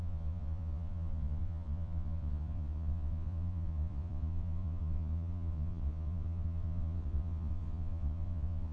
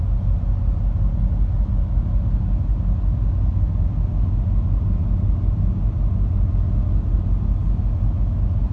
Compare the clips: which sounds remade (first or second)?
first